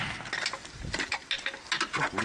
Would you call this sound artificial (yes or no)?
no